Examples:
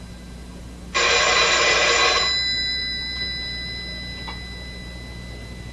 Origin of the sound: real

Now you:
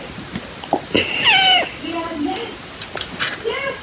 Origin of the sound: real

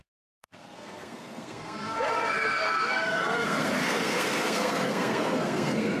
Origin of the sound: fake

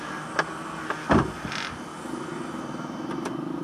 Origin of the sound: real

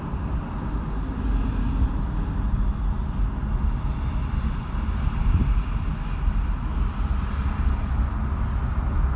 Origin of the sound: real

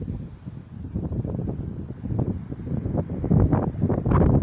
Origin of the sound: real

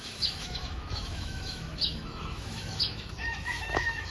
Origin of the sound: fake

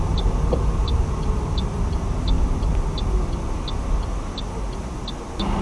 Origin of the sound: real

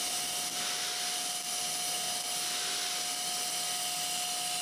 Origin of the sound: real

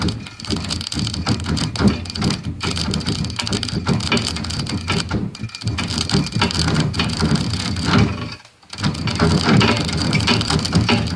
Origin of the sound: real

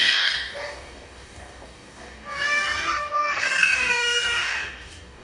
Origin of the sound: fake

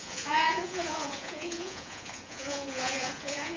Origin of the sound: fake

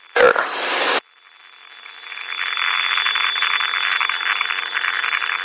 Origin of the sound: real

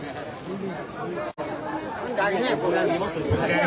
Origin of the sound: real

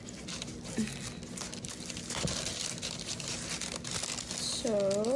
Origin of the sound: real